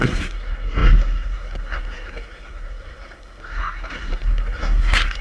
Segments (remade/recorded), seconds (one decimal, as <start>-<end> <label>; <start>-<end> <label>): 0.0-5.2 remade